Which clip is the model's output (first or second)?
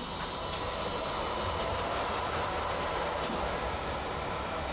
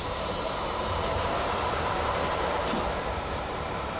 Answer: second